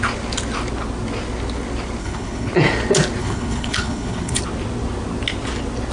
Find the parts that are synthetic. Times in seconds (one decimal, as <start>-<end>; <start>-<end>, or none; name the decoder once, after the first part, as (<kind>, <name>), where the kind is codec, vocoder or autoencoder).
2.0-2.5 (codec, HILCodec); 3.2-4.4